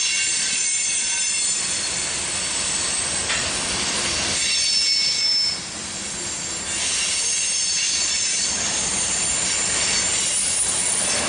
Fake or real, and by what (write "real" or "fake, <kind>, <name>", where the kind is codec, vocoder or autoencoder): real